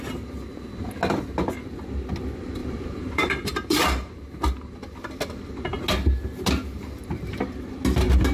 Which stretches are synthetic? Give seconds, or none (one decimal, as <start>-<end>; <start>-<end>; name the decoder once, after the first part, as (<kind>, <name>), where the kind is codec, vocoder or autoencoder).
2.6-4.2 (vocoder, BigVGAN v2)